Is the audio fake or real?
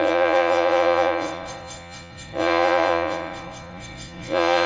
fake